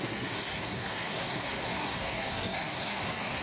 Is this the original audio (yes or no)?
no